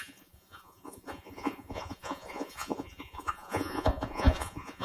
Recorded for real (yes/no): no